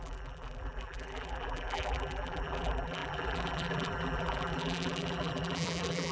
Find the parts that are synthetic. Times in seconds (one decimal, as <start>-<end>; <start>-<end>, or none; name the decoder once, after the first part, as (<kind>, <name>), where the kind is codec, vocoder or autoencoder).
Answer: 0.0-6.1 (vocoder, BigVGAN v2)